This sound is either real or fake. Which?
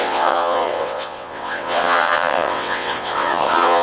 fake